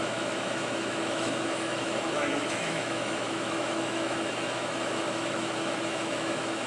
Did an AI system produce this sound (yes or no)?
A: yes